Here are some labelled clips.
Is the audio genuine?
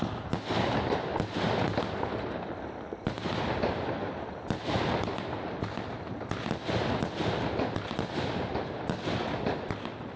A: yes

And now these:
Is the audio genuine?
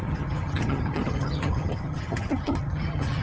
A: no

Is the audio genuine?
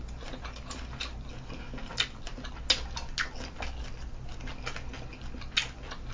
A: yes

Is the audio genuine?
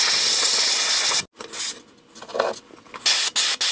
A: yes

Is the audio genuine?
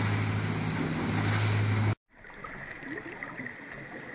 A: yes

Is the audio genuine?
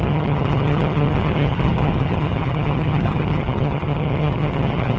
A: no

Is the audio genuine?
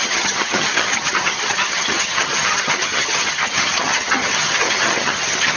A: no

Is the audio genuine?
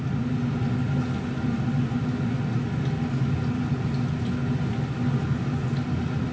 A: yes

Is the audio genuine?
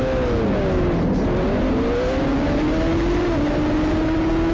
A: yes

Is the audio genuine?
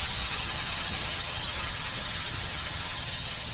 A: no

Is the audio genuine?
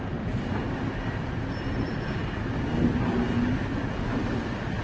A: yes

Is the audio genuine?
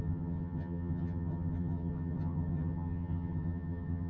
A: no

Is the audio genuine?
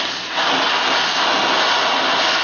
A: yes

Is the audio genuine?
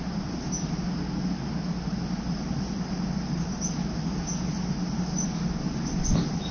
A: yes